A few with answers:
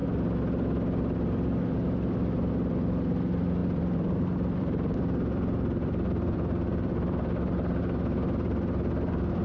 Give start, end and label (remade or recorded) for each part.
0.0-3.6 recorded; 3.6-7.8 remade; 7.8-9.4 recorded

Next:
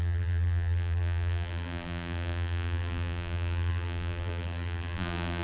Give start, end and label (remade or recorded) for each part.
0.0-5.4 remade

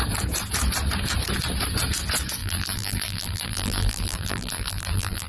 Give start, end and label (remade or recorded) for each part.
0.0-2.4 recorded; 2.4-5.3 remade

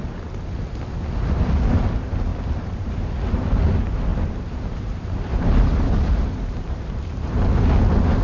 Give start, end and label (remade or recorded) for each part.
0.0-2.3 recorded; 2.3-3.1 remade; 3.1-4.1 recorded; 4.1-7.6 remade; 7.6-8.2 recorded

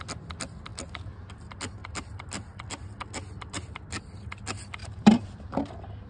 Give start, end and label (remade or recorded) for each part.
0.0-0.7 recorded; 0.7-1.4 remade; 1.4-1.8 recorded; 1.8-4.0 remade; 4.0-4.8 recorded; 4.8-5.6 remade; 5.6-6.1 recorded

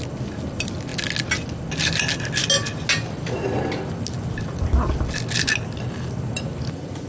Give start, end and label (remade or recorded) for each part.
0.0-7.1 recorded